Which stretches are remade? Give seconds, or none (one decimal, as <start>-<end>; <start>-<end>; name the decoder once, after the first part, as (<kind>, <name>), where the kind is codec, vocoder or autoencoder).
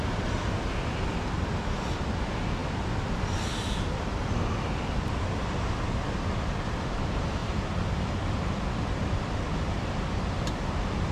none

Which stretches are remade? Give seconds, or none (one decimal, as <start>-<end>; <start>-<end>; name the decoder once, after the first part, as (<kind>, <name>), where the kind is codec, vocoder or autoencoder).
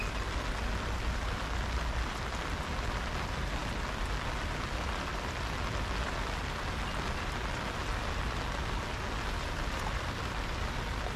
none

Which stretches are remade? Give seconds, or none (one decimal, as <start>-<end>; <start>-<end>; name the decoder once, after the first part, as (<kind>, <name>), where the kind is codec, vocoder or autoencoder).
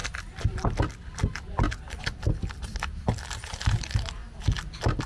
none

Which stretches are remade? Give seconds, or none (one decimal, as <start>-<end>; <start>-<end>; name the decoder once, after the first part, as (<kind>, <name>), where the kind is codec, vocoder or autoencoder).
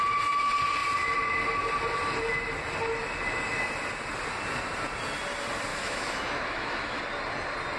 5.7-7.0 (autoencoder, DAC-VAE)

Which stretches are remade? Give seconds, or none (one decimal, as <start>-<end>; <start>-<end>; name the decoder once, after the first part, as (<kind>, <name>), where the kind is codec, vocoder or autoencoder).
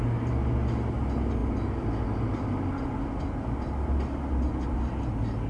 none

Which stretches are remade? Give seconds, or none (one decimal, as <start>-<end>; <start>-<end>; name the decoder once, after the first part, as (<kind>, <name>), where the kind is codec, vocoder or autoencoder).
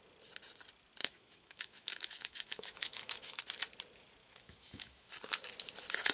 1.0-3.4 (autoencoder, DAC-VAE); 4.2-5.1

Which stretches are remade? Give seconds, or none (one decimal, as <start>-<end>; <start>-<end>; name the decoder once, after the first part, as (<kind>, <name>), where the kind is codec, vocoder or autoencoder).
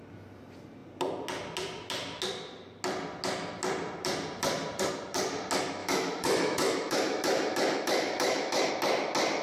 5.8-8.7 (autoencoder, DAC-VAE)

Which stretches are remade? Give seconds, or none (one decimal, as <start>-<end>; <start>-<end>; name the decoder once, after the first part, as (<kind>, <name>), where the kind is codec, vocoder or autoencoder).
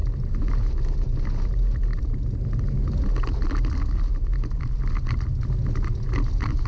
none